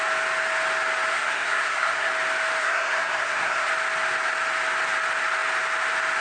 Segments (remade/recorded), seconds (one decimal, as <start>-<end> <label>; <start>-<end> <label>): 0.0-1.1 recorded; 1.1-2.1 remade; 2.1-2.6 recorded; 2.6-3.7 remade; 3.7-6.2 recorded